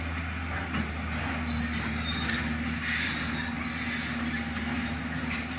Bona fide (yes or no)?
yes